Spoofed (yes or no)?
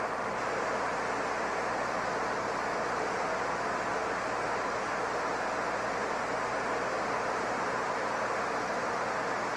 no